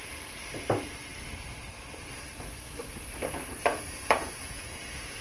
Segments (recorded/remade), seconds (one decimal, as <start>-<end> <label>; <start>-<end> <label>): 0.0-3.7 recorded; 3.7-5.2 remade